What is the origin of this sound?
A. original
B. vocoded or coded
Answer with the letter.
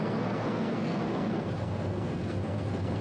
B